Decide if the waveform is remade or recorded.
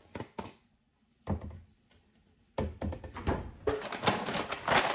recorded